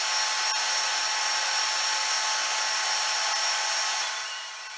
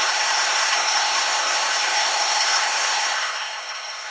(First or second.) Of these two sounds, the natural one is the first